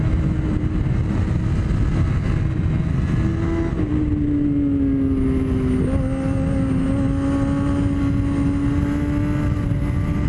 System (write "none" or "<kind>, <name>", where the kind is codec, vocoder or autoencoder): none